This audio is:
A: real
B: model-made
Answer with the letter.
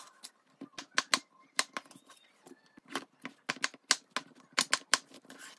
A